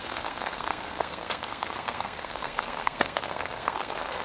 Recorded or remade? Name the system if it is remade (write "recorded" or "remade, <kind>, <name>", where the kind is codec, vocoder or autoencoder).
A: remade, codec, SNAC